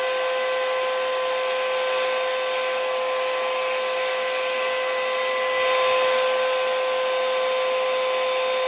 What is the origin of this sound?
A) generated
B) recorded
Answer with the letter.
B